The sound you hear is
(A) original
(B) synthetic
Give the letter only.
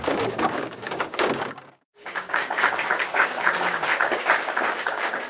B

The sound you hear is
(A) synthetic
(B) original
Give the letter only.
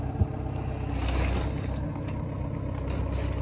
B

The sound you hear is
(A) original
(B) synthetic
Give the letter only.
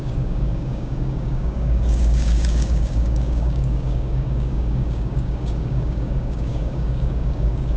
B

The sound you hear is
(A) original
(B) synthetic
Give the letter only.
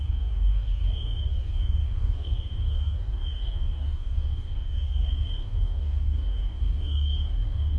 B